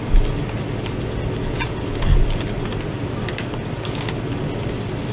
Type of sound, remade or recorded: recorded